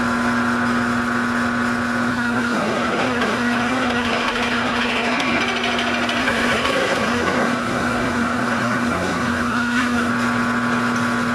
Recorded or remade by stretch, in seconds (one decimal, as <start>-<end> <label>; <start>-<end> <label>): 0.0-2.1 recorded; 2.1-5.4 remade; 5.4-6.2 recorded; 6.2-10.1 remade; 10.1-11.3 recorded

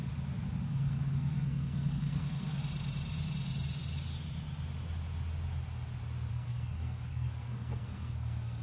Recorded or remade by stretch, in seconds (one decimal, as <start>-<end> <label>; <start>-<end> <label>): 0.0-0.6 recorded; 0.6-2.6 remade; 2.6-6.3 recorded; 6.3-8.6 remade

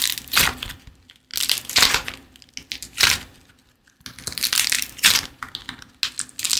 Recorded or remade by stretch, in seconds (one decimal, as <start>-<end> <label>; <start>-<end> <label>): 0.0-6.6 recorded

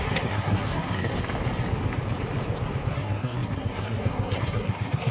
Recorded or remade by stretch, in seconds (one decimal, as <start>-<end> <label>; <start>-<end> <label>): 0.0-1.1 remade; 1.1-2.9 recorded; 2.9-5.1 remade

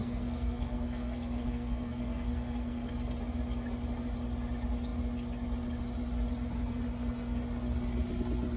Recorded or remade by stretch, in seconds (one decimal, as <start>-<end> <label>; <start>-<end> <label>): 0.0-2.9 remade; 2.9-8.6 recorded

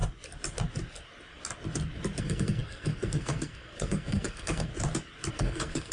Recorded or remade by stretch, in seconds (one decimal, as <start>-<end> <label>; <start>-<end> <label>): 0.0-2.2 recorded; 2.2-4.7 remade; 4.7-5.3 recorded; 5.3-5.9 remade